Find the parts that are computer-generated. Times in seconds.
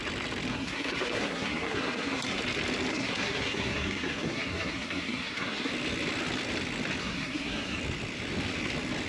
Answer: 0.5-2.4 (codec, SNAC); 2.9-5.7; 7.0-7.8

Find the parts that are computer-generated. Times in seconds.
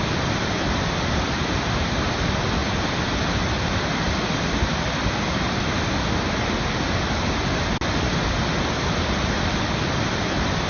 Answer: none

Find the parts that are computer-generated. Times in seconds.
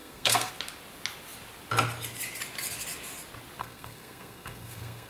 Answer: 0.0-0.5 (codec, SNAC); 3.6-5.1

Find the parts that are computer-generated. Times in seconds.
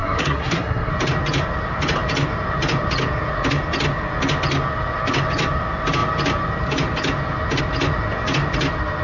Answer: 0.0-0.9 (codec, SNAC)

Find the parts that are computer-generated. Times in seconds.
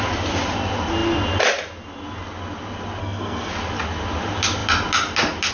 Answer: 3.0-3.5 (codec, SNAC)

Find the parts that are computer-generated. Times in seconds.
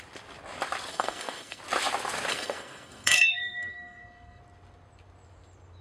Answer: 0.9-1.6 (codec, SNAC); 2.3-4.4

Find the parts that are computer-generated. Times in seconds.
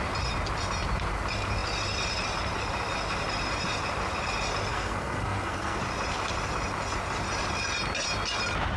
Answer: 4.7-5.8 (codec, SNAC)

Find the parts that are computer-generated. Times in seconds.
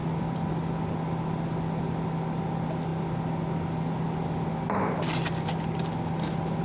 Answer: none